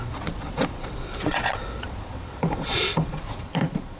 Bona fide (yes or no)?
no